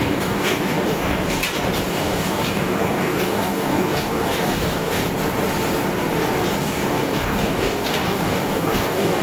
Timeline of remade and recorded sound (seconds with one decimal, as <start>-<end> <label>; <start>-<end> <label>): 0.0-1.4 remade; 1.4-1.9 recorded; 1.9-5.0 remade; 5.0-6.6 recorded; 6.6-9.2 remade